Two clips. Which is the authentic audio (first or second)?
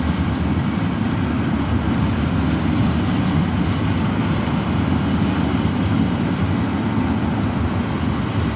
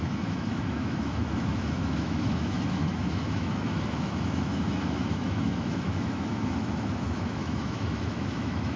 first